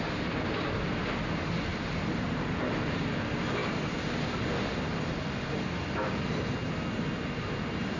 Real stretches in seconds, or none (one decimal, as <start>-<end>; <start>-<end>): 0.0-1.7; 2.5-8.0